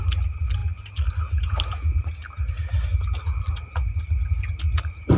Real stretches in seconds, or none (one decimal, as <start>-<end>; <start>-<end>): 0.0-5.2